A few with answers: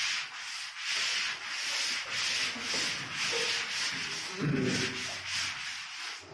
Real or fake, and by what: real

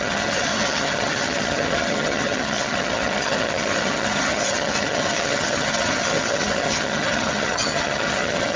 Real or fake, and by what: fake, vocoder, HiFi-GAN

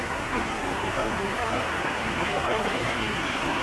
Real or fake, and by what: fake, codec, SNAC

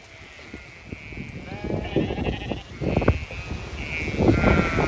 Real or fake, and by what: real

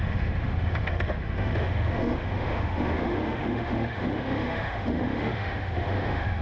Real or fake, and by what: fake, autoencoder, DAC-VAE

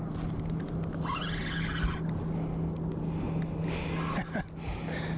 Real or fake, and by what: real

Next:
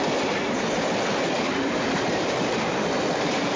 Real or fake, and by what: fake, vocoder, BigVGAN v2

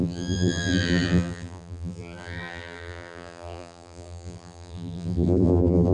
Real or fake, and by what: fake, vocoder, BigVGAN v2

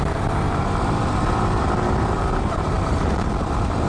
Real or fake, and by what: fake, vocoder, BigVGAN v2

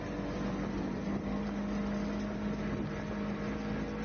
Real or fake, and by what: real